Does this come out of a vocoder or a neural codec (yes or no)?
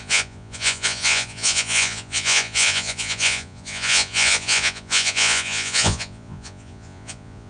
yes